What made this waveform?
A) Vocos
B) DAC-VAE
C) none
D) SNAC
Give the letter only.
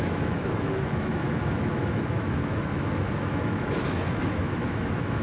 B